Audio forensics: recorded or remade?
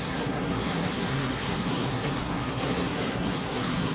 remade